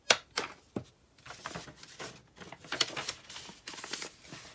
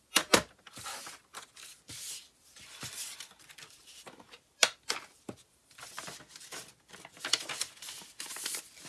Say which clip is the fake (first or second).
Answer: second